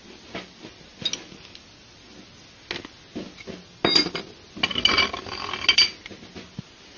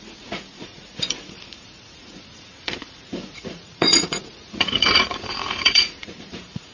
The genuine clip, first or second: first